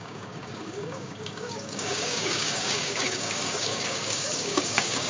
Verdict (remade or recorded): remade